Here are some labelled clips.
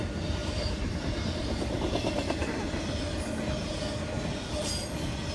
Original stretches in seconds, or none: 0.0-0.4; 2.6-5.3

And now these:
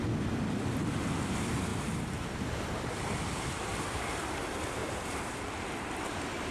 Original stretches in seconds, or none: 0.0-1.7; 3.3-4.8; 5.4-6.5

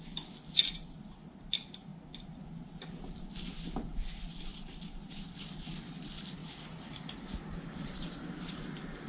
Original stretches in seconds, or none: 0.0-6.4; 8.5-9.1

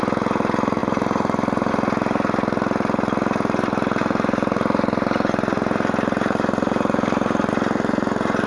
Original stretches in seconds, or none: 0.0-0.8; 1.7-4.0; 7.5-8.5

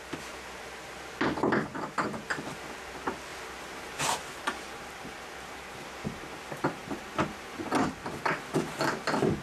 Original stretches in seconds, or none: 0.0-4.4; 5.1-9.4

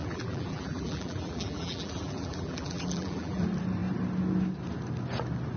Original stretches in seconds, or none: 3.4-5.6

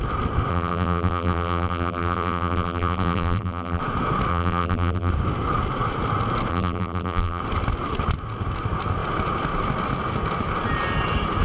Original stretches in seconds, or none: 0.0-0.5; 3.8-4.3; 5.1-6.5; 7.4-11.4